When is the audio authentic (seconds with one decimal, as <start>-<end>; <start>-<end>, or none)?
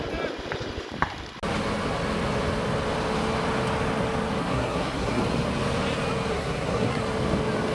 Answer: 0.0-4.4; 5.2-6.3; 7.0-7.7